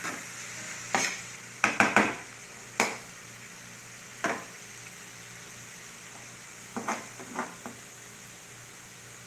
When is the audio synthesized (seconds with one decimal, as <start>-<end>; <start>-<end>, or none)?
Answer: 0.0-6.7; 7.9-9.3